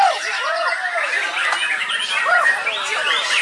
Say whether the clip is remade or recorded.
recorded